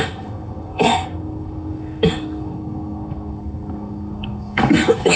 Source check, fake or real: fake